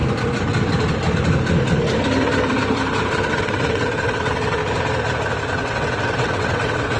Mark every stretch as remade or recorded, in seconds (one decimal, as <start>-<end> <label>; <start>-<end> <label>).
0.0-3.3 recorded; 3.3-4.6 remade; 4.6-5.5 recorded; 5.5-7.0 remade